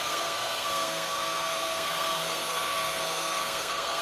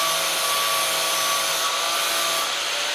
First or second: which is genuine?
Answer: second